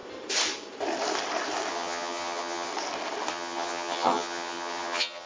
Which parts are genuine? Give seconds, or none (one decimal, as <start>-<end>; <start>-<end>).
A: 0.0-1.7; 2.7-3.3